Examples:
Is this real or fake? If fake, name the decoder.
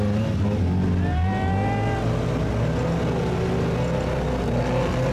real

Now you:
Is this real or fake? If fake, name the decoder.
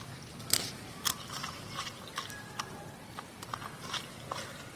real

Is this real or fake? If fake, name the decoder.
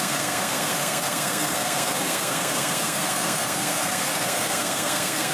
fake, codec, SNAC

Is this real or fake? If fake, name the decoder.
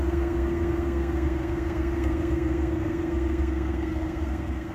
fake, codec, SNAC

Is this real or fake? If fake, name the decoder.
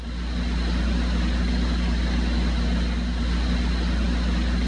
real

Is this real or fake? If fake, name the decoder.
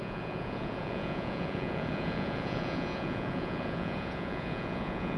fake, vocoder, Vocos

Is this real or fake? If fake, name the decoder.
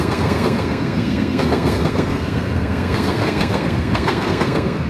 fake, codec, SNAC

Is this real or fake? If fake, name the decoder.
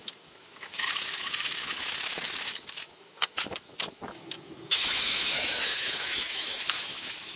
fake, autoencoder, DAC-VAE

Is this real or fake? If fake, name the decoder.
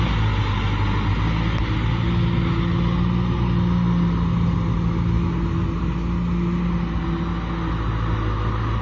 real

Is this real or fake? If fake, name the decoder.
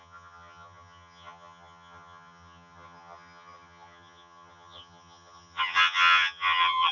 fake, vocoder, HiFi-GAN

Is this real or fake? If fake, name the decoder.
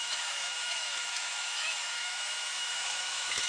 fake, autoencoder, DAC-VAE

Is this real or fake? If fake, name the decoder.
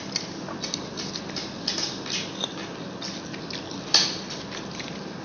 real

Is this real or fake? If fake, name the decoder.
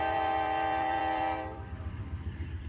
fake, vocoder, BigVGAN v2